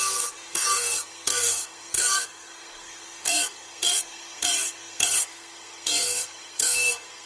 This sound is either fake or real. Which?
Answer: fake